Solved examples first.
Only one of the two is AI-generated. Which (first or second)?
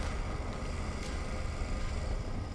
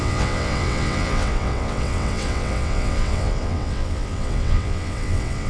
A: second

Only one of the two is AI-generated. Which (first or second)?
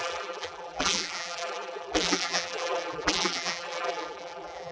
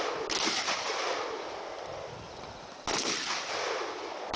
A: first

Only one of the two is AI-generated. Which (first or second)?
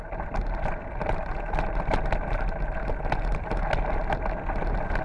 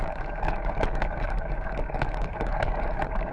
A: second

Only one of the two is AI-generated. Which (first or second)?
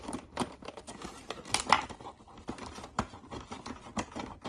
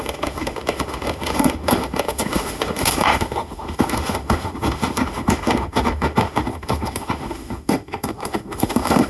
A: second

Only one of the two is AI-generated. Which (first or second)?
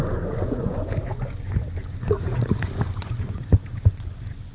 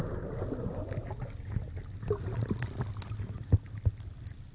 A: first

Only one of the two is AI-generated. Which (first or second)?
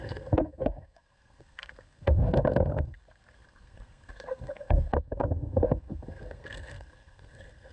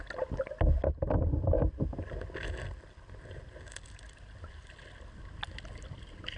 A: first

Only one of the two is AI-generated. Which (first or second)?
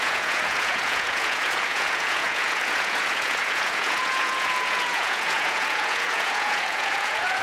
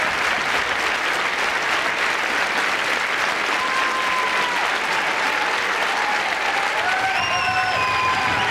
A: first